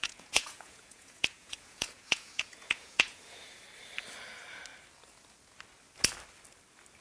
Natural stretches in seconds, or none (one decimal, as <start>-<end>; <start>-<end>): 3.6-7.0